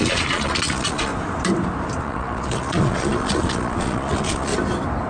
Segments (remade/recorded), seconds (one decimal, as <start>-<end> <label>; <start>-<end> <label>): 0.0-1.1 remade; 1.1-2.0 recorded; 2.0-4.5 remade; 4.5-5.1 recorded